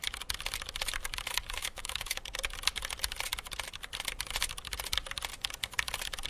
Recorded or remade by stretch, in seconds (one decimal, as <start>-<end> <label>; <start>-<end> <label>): 0.0-1.6 recorded; 1.6-2.2 remade; 2.2-6.3 recorded